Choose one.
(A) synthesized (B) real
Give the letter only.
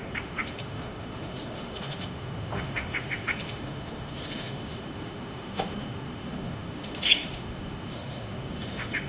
A